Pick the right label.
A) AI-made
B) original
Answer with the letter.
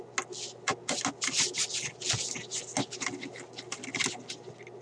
B